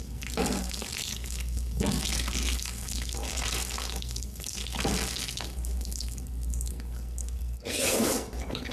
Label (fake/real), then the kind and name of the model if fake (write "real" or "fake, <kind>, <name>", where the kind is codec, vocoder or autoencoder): fake, codec, SNAC